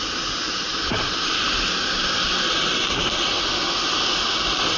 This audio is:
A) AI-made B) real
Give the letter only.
B